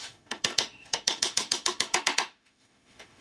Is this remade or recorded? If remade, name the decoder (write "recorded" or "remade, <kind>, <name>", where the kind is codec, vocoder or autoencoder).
remade, autoencoder, DAC-VAE